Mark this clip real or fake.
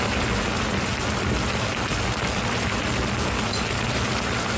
real